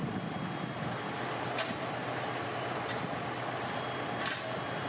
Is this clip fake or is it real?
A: real